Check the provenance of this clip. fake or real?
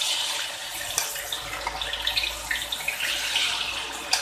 real